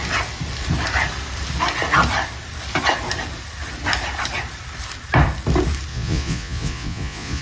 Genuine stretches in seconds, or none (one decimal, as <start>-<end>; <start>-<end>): 0.0-5.9